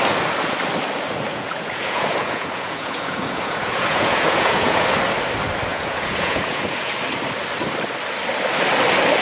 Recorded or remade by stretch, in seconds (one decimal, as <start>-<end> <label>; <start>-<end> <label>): 0.0-1.3 recorded; 1.3-4.8 remade; 4.8-5.7 recorded; 5.7-6.9 remade; 6.9-9.2 recorded